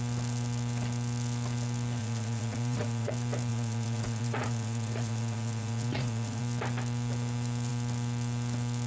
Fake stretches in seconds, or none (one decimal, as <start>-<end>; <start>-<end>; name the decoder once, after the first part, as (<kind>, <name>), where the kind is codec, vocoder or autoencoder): 2.0-3.1 (vocoder, Vocos); 3.5-6.4